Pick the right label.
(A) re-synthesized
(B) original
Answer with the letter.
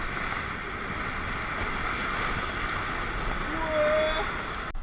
B